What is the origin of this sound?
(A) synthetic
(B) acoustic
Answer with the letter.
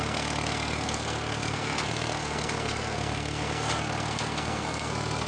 A